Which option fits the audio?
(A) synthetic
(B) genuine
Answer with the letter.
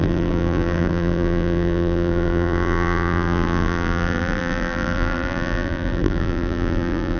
A